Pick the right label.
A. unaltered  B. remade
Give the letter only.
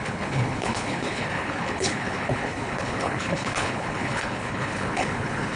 B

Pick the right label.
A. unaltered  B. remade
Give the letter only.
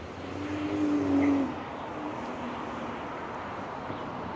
A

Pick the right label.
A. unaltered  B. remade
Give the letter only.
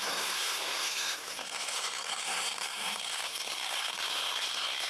B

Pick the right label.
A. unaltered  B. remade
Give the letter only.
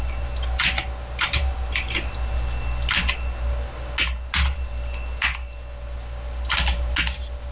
A